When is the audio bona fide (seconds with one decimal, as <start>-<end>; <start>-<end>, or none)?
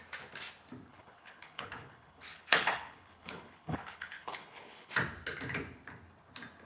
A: 0.0-0.9; 4.9-6.7